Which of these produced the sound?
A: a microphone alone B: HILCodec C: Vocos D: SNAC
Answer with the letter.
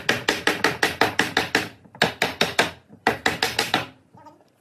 A